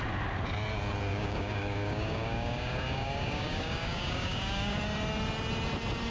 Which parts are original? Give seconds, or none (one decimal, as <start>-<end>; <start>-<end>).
0.0-1.1; 4.8-6.1